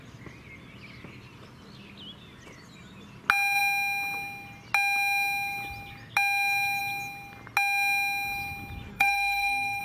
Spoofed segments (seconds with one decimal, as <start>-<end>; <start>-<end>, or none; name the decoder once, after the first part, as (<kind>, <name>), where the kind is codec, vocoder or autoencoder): 8.9-9.8 (codec, SNAC)